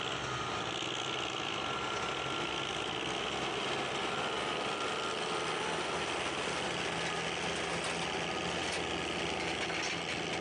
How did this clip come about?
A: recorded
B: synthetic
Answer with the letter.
A